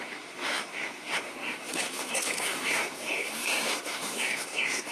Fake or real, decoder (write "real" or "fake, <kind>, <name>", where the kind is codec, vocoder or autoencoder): fake, codec, SNAC